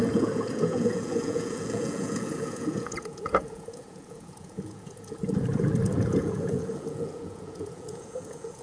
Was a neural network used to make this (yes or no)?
yes